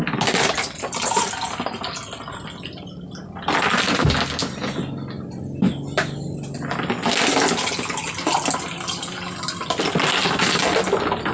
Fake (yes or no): no